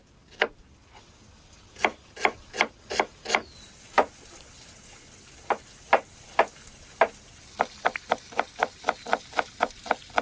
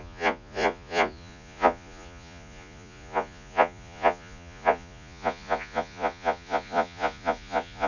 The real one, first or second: first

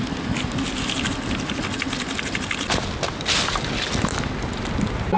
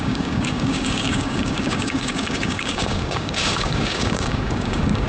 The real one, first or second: first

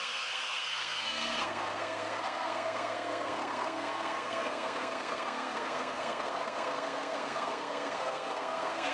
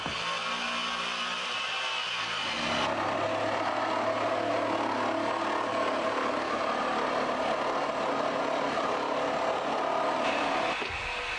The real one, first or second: second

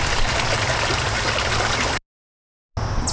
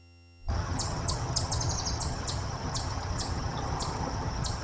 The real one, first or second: first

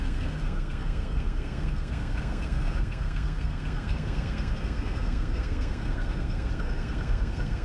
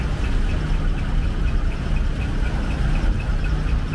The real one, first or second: second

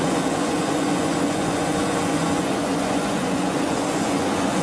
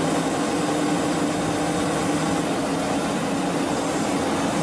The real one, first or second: second